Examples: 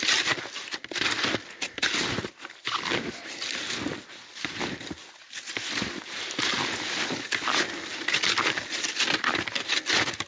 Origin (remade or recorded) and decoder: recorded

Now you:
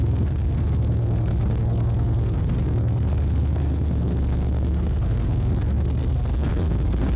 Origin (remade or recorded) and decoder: remade, codec, SNAC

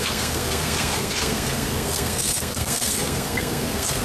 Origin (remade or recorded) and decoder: remade, codec, SNAC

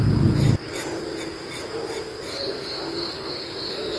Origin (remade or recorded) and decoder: recorded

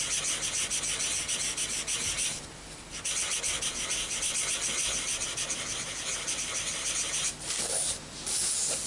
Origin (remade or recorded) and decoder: recorded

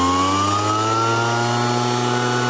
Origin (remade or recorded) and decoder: recorded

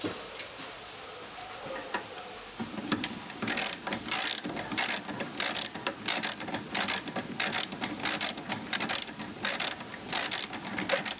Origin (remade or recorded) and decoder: recorded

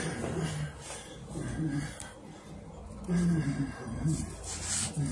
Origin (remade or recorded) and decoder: recorded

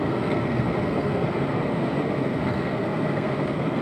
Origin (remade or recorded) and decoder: remade, codec, SNAC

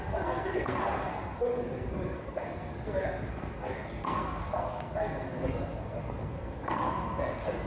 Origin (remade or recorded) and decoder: remade, codec, SNAC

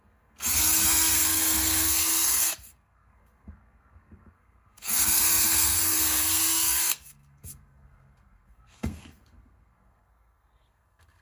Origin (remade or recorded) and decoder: remade, codec, SNAC